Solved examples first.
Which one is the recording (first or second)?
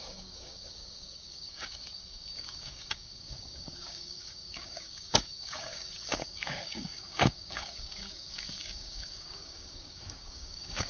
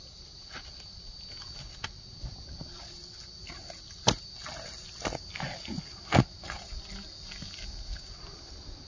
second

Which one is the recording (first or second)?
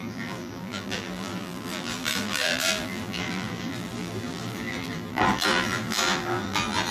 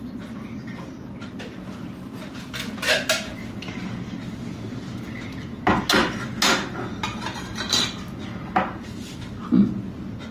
second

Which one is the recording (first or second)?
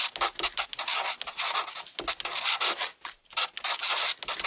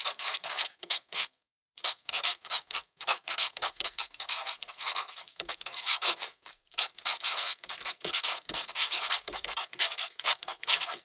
first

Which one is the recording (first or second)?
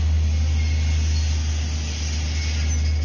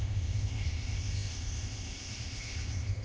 first